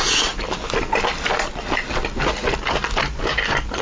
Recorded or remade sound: recorded